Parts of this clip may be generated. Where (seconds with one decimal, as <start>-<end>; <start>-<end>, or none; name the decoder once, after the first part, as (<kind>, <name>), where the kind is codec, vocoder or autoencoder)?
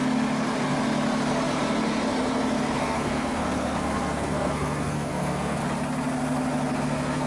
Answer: 2.8-5.6 (codec, SNAC); 6.8-7.3